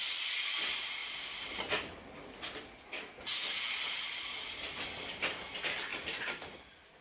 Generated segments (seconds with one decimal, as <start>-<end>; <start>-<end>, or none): 1.0-5.0; 5.9-6.6